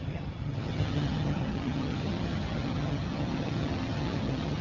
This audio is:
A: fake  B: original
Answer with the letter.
A